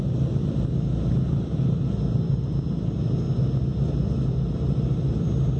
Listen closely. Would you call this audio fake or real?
real